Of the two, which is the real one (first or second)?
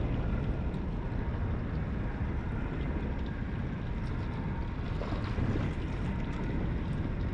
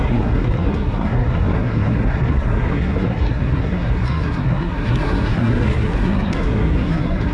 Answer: first